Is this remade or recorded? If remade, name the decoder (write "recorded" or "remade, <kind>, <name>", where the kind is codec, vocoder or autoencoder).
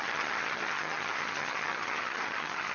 remade, vocoder, HiFi-GAN